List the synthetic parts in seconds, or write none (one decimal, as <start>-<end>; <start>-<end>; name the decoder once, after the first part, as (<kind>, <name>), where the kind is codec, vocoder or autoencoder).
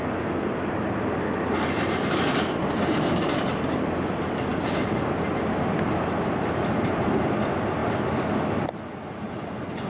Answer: none